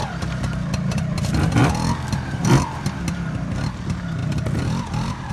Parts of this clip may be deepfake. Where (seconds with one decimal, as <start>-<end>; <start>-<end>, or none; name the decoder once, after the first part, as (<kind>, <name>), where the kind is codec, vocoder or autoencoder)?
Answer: none